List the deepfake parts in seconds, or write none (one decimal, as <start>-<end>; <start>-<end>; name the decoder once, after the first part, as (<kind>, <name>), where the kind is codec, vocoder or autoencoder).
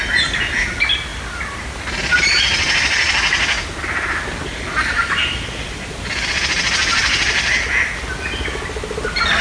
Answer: none